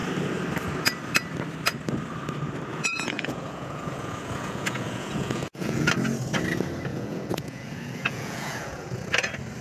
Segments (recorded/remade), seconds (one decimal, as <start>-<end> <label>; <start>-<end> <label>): 0.0-2.7 recorded; 2.7-5.9 remade; 5.9-6.9 recorded; 6.9-9.1 remade; 9.1-9.6 recorded